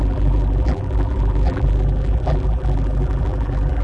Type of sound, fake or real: fake